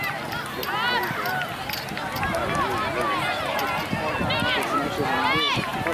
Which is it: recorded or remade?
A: recorded